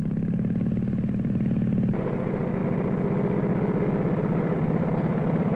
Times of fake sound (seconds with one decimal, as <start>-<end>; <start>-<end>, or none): 0.0-2.6; 4.4-5.6